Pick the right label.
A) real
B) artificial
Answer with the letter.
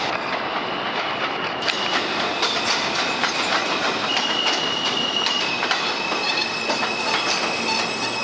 B